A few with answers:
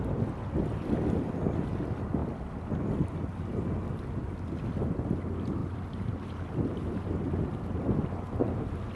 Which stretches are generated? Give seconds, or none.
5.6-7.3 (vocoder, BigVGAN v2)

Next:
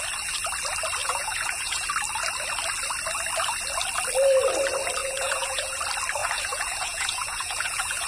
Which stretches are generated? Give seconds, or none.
1.0-1.9 (vocoder, Vocos); 5.0-5.8; 6.2-8.1

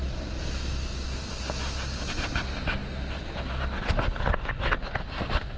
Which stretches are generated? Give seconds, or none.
none

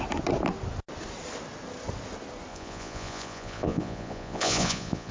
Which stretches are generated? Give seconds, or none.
2.5-5.1 (vocoder, Vocos)

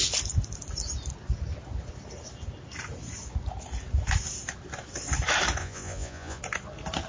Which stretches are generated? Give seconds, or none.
5.6-6.4 (vocoder, Vocos)

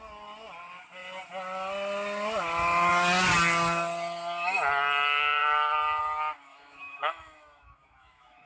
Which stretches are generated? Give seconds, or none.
6.5-8.5 (autoencoder, DAC-VAE)

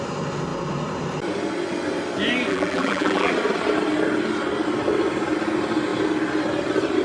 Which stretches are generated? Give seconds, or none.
2.5-3.3 (vocoder, BigVGAN v2)

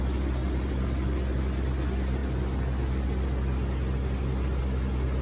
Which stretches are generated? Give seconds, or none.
none